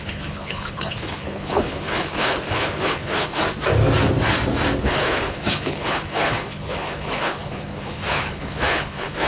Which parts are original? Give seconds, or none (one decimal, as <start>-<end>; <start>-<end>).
3.4-4.8